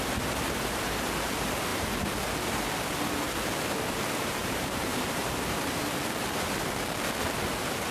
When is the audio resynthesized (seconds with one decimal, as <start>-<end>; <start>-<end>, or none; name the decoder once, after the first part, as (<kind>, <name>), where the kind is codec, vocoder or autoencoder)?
1.7-2.2 (vocoder, BigVGAN v2); 4.4-5.6